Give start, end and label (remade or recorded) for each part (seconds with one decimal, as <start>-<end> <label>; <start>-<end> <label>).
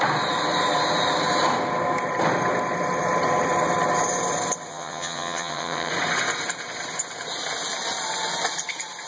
0.0-4.7 recorded; 4.7-5.9 remade; 5.9-9.1 recorded